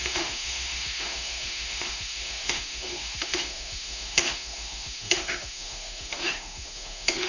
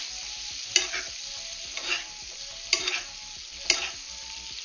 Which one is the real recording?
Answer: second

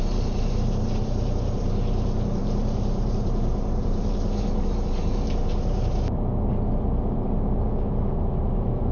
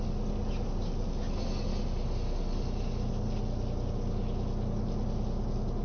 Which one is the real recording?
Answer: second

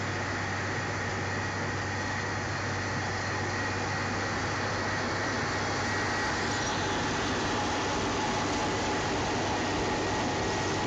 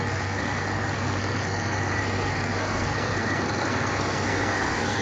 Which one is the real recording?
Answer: first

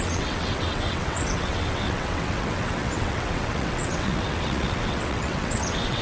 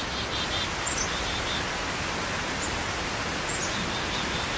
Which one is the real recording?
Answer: second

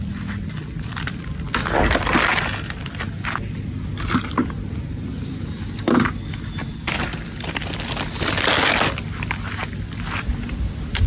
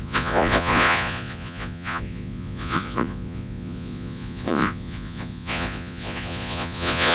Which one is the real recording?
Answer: first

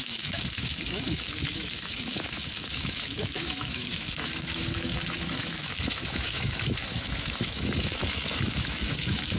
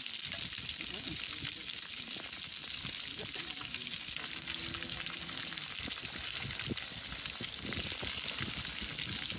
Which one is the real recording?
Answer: second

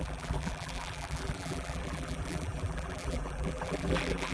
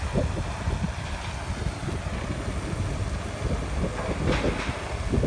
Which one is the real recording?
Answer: second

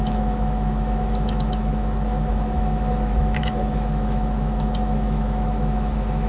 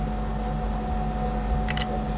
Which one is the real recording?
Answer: second